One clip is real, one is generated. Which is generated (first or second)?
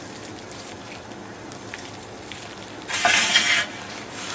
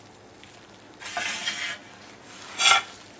first